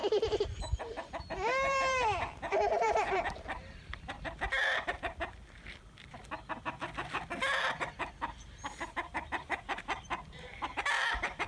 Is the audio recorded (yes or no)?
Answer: no